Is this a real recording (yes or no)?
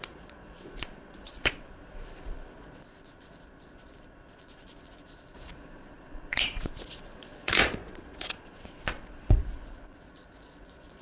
no